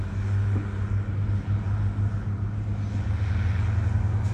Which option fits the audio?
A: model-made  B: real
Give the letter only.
B